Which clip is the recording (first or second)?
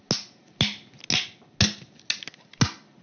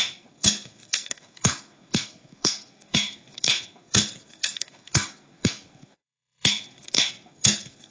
first